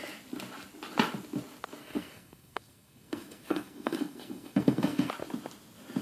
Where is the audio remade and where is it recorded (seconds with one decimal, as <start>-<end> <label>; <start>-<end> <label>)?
0.0-1.8 recorded; 1.8-5.1 remade; 5.1-6.0 recorded